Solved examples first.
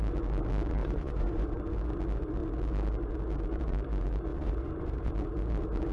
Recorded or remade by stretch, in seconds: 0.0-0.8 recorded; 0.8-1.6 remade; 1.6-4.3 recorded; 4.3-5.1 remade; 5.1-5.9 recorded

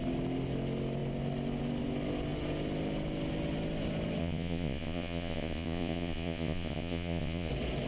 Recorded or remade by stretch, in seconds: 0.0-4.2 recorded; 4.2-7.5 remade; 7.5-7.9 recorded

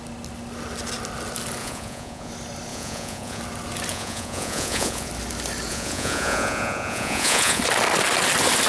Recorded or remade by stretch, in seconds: 0.0-1.6 recorded; 1.6-2.3 remade; 2.3-2.7 recorded; 2.7-3.4 remade; 3.4-3.9 recorded; 3.9-5.1 remade; 5.1-5.7 recorded; 5.7-7.6 remade; 7.6-8.7 recorded